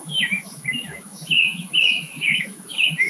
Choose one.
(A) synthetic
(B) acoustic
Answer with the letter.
A